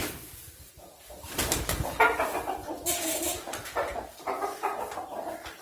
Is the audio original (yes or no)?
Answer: no